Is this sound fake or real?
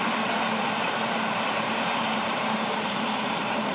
fake